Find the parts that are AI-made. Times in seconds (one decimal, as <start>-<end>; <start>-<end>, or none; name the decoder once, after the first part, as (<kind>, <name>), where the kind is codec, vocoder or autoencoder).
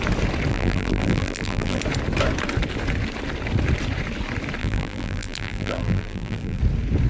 0.5-1.8 (vocoder, BigVGAN v2); 4.6-6.6